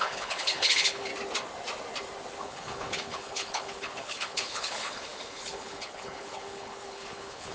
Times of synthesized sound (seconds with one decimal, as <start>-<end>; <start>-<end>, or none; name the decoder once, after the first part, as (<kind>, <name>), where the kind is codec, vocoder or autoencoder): 0.0-1.1 (codec, HILCodec); 2.4-7.5